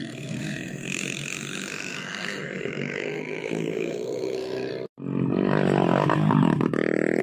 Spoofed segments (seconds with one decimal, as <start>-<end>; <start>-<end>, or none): 0.0-4.7